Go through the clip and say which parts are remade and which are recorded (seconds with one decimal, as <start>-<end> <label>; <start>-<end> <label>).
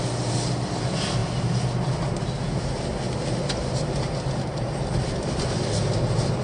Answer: 0.0-6.4 recorded